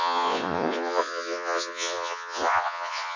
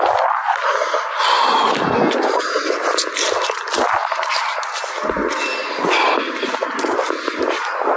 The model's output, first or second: first